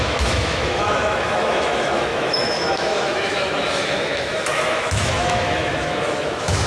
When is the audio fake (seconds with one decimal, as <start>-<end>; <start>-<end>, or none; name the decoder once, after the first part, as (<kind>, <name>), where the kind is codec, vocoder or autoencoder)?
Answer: 0.0-6.7 (autoencoder, DAC-VAE)